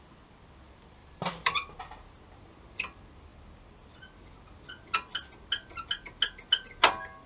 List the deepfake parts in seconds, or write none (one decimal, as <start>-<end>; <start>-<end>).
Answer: 1.0-1.8